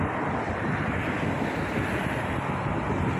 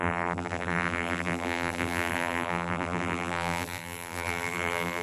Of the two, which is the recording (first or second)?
first